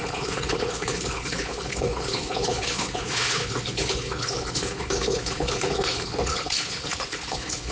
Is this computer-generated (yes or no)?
yes